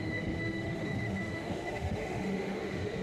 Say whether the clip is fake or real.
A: fake